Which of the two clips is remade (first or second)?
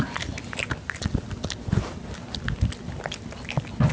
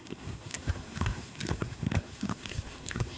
second